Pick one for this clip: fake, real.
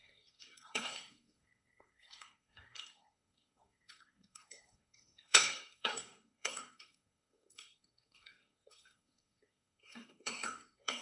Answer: fake